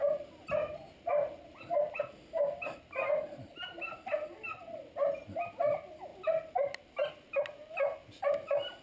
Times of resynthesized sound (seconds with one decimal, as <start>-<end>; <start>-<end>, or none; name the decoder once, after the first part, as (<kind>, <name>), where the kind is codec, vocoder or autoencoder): none